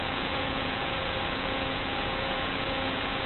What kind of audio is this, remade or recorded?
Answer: remade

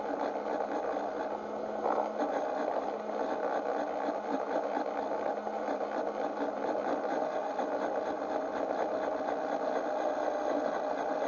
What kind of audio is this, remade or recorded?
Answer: recorded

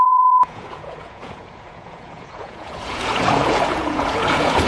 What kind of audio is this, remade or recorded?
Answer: remade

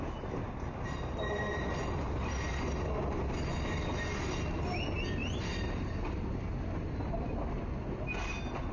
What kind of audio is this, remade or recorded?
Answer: recorded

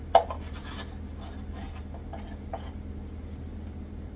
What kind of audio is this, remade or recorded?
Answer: recorded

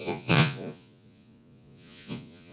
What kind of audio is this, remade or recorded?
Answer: remade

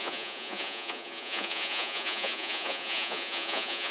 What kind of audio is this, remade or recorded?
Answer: remade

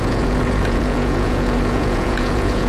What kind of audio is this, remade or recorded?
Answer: remade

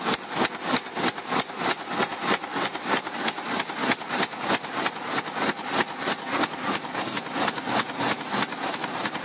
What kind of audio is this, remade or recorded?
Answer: recorded